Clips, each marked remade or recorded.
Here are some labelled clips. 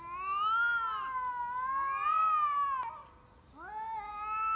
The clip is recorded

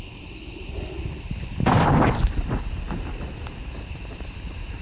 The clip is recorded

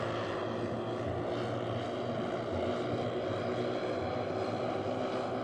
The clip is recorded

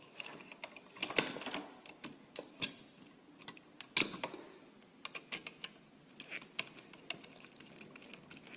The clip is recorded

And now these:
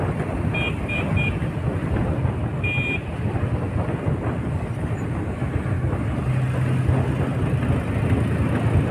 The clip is recorded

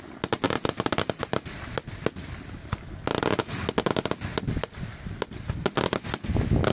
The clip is recorded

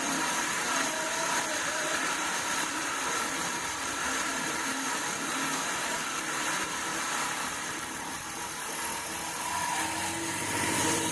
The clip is remade